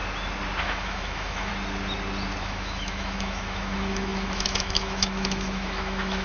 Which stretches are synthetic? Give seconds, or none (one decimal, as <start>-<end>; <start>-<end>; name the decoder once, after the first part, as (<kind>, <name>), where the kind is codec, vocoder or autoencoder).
0.6-1.5 (autoencoder, DAC-VAE); 2.4-6.2